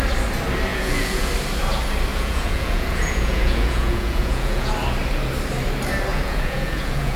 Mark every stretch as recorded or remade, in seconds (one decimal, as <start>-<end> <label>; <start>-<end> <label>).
0.0-0.7 recorded; 0.7-1.3 remade; 1.3-2.1 recorded; 2.1-4.7 remade; 4.7-6.1 recorded; 6.1-7.2 remade